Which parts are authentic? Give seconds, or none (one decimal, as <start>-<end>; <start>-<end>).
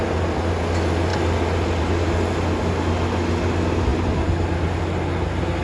0.0-5.6